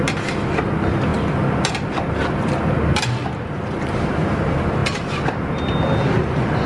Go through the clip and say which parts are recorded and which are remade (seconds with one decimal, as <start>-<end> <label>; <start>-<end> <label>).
0.0-6.7 recorded